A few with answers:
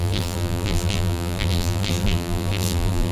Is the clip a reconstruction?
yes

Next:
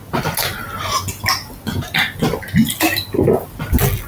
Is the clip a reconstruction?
no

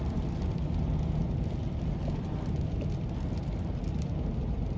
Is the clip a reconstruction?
no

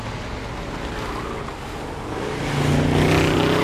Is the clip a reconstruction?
no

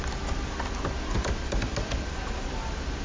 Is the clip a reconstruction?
no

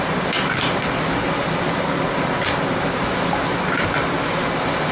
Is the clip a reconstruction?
no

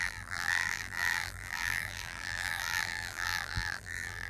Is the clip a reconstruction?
yes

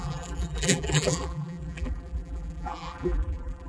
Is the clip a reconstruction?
yes